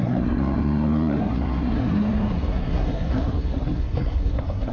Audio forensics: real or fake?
fake